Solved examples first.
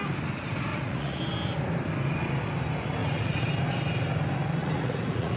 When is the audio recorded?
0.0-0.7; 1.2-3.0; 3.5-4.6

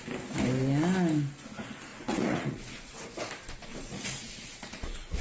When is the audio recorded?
0.0-1.9; 3.3-3.7

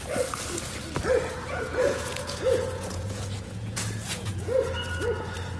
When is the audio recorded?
0.0-1.2; 4.6-5.6